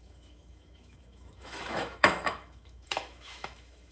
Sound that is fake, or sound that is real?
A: fake